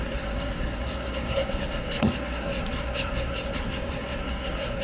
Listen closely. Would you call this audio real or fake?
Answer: fake